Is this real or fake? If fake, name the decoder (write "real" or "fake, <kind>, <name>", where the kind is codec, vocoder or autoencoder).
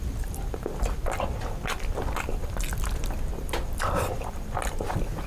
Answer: fake, vocoder, BigVGAN v2